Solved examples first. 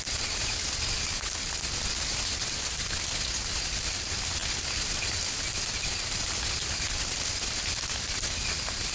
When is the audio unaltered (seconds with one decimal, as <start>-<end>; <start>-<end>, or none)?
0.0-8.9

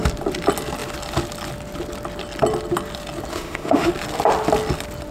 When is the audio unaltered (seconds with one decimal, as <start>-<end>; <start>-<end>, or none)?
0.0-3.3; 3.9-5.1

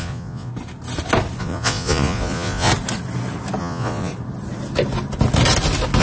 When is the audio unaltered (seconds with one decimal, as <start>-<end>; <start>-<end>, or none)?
0.5-1.4; 2.7-3.6; 4.1-6.0

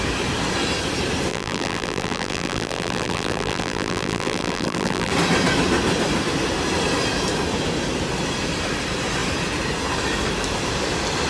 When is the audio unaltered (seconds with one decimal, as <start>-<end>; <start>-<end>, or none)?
0.0-1.3; 5.1-11.3

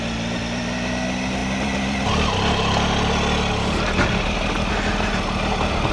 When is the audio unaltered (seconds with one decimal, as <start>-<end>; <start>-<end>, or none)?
0.0-5.9